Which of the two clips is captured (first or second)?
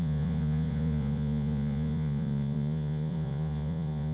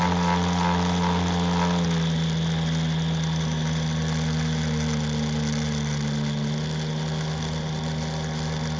second